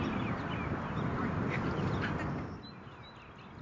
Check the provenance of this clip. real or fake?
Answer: real